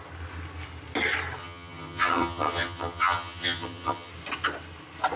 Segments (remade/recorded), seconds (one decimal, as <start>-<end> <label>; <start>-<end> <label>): 0.0-1.4 recorded; 1.4-4.1 remade; 4.1-5.2 recorded

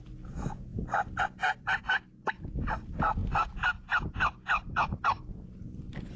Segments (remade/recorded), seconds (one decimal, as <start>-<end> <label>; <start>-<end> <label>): 0.0-6.2 recorded

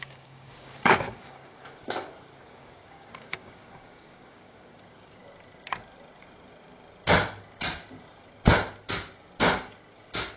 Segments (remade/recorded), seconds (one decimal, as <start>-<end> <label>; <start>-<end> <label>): 0.0-1.6 remade; 1.6-2.4 recorded; 2.4-5.2 remade; 5.2-10.4 recorded

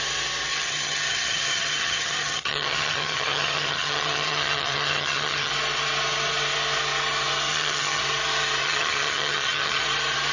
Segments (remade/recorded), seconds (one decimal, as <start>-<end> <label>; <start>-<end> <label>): 0.0-0.5 recorded; 0.5-5.5 remade; 5.5-7.5 recorded; 7.5-8.0 remade; 8.0-8.6 recorded; 8.6-9.8 remade; 9.8-10.3 recorded

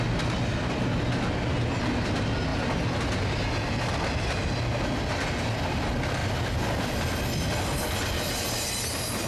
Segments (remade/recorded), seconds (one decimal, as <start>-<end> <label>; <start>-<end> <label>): 0.0-9.3 recorded